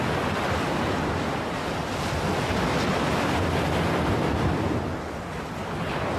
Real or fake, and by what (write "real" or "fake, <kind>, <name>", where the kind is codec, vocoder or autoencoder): real